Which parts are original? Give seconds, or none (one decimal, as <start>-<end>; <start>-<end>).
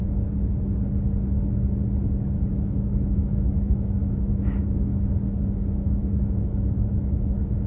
0.0-2.5; 4.9-5.7